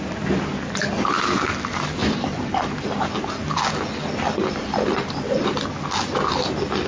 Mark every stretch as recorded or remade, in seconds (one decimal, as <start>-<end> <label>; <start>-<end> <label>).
0.0-2.0 recorded; 2.0-2.8 remade; 2.8-4.6 recorded; 4.6-5.5 remade; 5.5-6.9 recorded